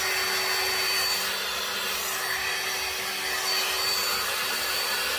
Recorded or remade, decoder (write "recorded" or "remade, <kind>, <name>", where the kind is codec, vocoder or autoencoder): recorded